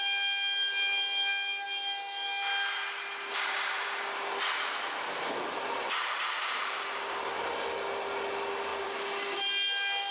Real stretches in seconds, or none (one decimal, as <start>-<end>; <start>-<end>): 0.0-10.1